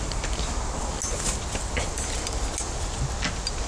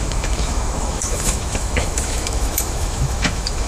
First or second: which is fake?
second